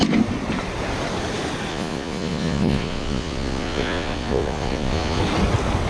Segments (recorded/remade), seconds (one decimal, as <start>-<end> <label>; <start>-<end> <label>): 0.0-1.7 recorded; 1.7-5.2 remade; 5.2-5.9 recorded